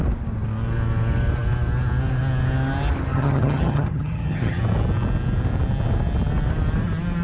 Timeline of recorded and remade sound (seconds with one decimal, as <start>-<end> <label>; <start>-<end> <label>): 0.0-3.1 recorded; 3.1-4.6 remade; 4.6-7.2 recorded